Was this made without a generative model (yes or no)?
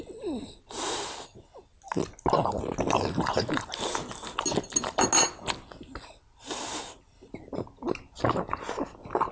yes